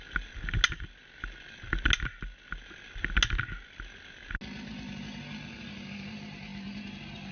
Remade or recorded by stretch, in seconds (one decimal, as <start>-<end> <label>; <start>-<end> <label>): 0.0-7.3 recorded